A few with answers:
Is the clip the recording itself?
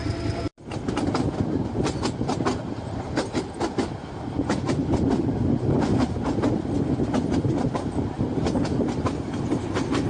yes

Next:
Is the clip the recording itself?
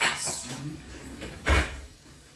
no